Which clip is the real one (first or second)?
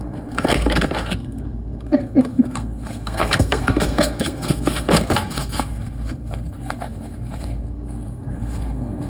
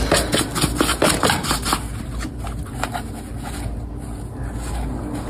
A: second